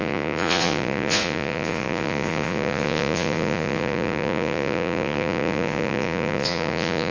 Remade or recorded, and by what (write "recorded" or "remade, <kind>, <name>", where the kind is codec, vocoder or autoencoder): remade, vocoder, Vocos